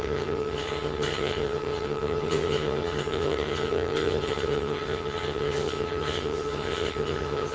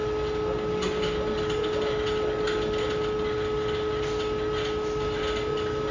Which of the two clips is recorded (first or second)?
second